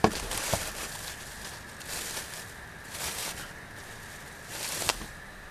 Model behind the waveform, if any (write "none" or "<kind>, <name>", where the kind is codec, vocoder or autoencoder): none